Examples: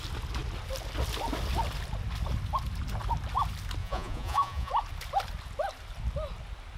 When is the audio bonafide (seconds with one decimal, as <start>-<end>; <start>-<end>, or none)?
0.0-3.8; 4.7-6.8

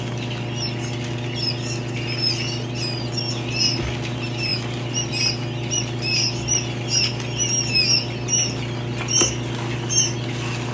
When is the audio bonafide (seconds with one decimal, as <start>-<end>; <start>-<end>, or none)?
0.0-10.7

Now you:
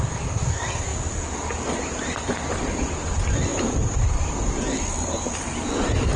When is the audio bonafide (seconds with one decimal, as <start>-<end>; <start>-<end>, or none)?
0.0-0.9; 3.1-3.5; 4.9-6.2